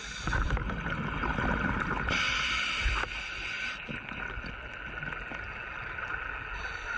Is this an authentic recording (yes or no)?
yes